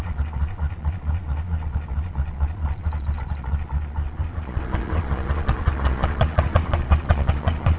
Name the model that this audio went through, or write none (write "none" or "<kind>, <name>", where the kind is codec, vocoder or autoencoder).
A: vocoder, Vocos